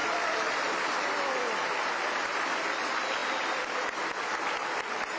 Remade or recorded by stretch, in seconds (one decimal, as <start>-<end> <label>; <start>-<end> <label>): 0.0-5.2 remade